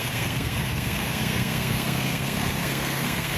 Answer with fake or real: fake